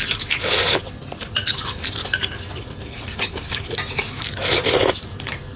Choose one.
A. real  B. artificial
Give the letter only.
A